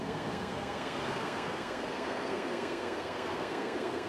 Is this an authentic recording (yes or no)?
no